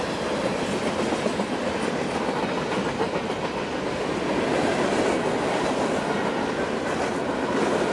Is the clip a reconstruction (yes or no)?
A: no